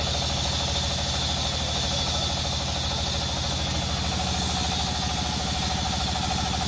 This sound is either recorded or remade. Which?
recorded